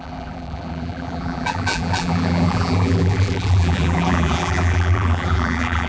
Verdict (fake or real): fake